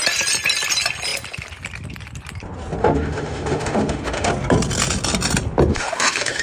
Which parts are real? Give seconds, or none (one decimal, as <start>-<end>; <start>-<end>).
0.0-2.8; 4.3-5.7